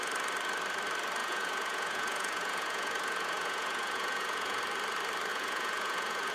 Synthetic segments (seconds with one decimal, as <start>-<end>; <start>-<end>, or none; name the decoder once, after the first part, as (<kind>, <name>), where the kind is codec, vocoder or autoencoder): 1.2-4.6 (vocoder, Vocos); 5.3-6.3